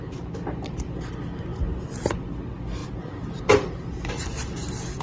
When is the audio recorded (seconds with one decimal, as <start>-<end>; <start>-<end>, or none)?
0.0-5.0